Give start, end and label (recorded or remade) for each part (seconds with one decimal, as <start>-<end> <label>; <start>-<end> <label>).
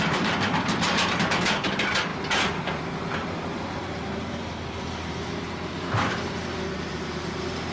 0.0-7.7 remade